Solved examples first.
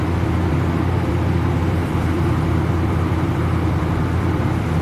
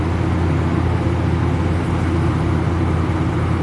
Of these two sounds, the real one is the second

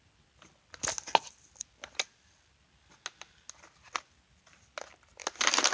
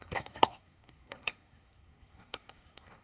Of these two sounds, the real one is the first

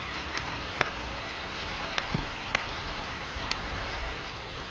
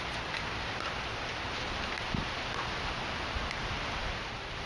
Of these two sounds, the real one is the second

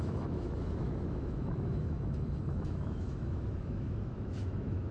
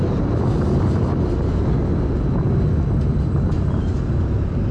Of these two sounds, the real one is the second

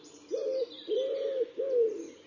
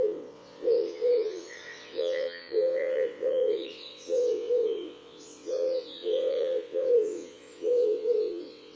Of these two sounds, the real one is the first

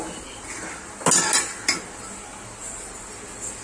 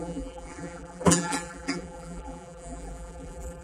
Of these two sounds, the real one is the first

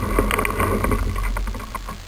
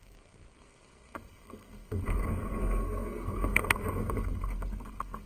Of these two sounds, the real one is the first